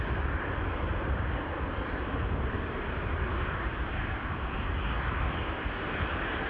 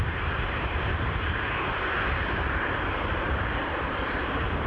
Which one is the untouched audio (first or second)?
first